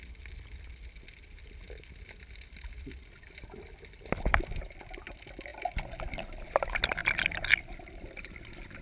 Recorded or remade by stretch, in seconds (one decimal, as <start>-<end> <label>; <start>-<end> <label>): 0.0-8.8 recorded